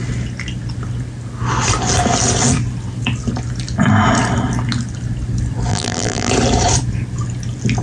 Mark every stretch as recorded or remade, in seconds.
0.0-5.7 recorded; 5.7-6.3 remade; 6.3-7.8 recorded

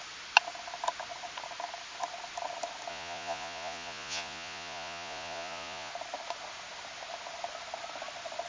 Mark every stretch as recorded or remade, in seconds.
0.0-2.9 recorded; 2.9-5.9 remade; 5.9-8.5 recorded

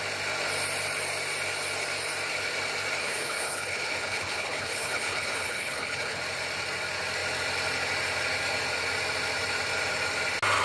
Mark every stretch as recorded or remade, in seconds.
0.0-3.0 recorded; 3.0-6.2 remade; 6.2-10.6 recorded